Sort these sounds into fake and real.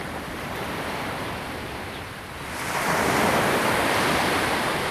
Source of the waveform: real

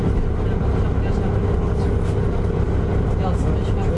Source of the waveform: real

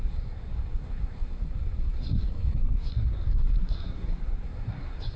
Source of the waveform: fake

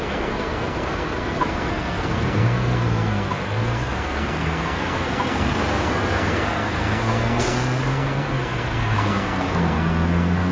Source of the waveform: fake